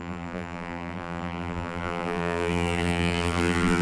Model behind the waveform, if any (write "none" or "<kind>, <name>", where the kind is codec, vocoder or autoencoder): vocoder, BigVGAN v2